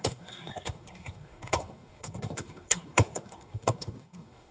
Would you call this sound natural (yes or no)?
no